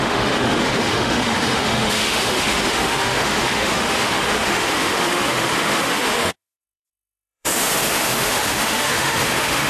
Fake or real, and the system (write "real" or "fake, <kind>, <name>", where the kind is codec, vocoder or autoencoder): fake, autoencoder, DAC-VAE